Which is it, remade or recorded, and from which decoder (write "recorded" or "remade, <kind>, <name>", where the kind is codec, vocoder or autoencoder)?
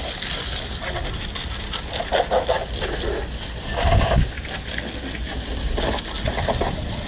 recorded